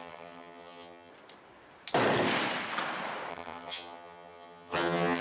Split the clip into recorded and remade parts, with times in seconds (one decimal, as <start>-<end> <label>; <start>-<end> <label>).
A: 0.0-1.1 remade; 1.1-3.3 recorded; 3.3-5.2 remade